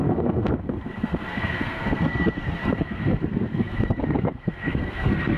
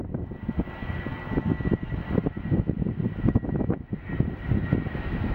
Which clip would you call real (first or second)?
second